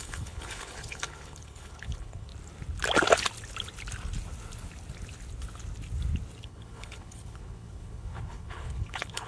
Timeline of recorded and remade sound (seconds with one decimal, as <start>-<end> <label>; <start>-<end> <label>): 0.0-2.3 remade; 2.3-6.4 recorded; 6.4-9.3 remade